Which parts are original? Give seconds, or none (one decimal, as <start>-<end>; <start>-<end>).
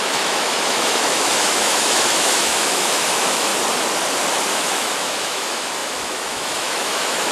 3.5-4.5